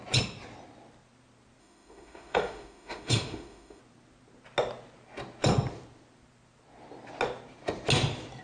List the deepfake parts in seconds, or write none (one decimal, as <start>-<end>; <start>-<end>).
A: 1.6-3.8